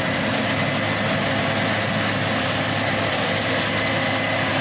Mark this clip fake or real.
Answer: real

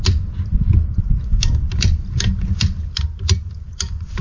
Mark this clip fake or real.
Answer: fake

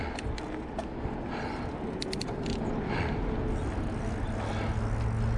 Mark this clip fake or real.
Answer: real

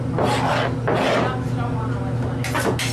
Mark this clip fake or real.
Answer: real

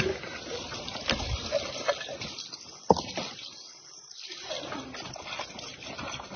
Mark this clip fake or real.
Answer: fake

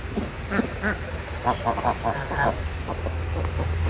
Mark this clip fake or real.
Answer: real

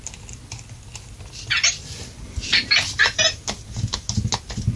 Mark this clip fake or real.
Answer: real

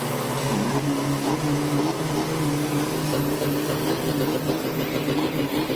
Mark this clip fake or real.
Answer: real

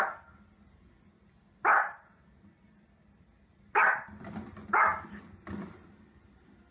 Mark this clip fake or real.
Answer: real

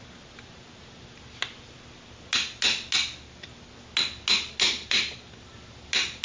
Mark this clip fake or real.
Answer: real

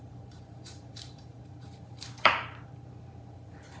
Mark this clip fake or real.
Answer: fake